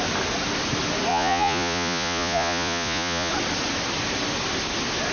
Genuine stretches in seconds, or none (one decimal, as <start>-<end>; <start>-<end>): 0.0-1.1; 3.3-5.1